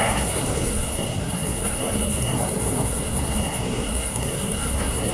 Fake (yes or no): yes